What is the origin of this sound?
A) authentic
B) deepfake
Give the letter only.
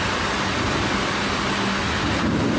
A